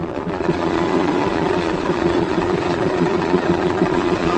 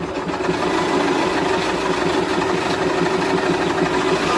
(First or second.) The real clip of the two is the second